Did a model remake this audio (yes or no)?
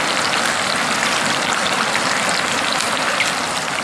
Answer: yes